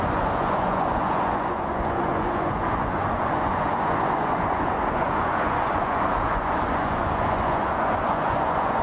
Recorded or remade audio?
remade